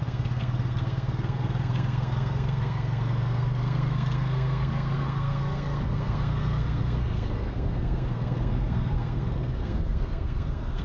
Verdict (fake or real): fake